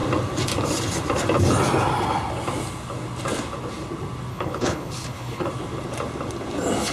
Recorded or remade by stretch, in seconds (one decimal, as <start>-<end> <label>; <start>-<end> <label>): 0.0-4.3 recorded; 4.3-5.5 remade; 5.5-6.9 recorded